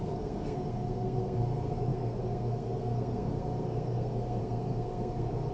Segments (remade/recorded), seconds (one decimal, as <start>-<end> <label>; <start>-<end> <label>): 0.0-5.5 remade